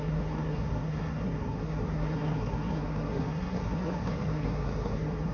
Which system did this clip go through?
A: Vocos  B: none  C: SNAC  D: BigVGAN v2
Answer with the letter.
C